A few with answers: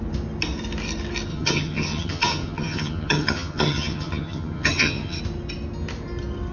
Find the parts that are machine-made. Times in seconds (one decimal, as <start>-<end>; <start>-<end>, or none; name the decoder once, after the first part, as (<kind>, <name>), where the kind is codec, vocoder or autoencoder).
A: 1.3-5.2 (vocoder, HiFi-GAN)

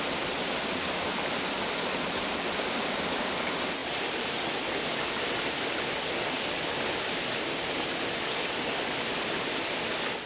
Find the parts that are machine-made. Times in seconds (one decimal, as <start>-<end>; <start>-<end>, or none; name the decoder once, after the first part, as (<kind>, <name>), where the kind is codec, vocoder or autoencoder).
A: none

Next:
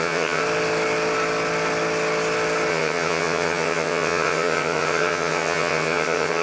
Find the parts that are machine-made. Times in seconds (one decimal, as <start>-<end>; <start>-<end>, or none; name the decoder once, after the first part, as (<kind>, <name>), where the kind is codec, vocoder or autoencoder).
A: 0.0-0.4 (vocoder, HiFi-GAN); 2.7-6.4